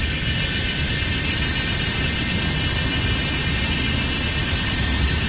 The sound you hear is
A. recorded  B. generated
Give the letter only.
A